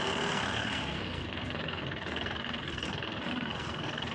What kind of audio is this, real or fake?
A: fake